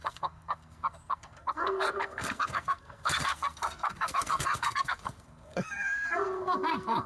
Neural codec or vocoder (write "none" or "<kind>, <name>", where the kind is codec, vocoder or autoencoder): codec, SNAC